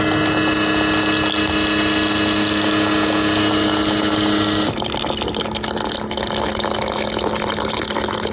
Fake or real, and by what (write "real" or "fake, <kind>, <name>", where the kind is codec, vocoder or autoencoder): real